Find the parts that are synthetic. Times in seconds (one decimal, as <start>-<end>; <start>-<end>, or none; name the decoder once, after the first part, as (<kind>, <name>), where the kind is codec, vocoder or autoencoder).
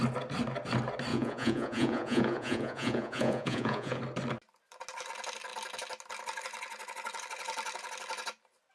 1.1-4.0 (vocoder, Vocos)